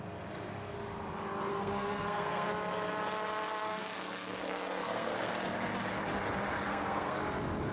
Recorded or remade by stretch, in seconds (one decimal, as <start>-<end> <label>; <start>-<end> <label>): 0.0-1.5 recorded; 1.5-2.5 remade; 2.5-3.7 recorded; 3.7-5.3 remade; 5.3-6.7 recorded; 6.7-7.2 remade; 7.2-7.7 recorded